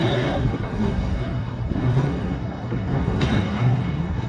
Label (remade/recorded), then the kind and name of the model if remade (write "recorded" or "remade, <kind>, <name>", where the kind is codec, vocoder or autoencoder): remade, codec, SNAC